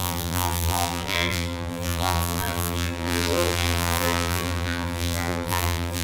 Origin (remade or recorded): remade